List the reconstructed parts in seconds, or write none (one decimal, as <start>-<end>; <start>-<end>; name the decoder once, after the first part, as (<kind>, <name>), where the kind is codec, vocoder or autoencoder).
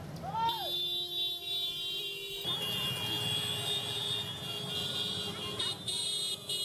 none